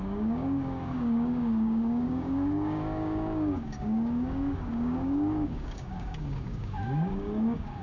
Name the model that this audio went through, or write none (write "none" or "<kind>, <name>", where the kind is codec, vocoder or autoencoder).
codec, DAC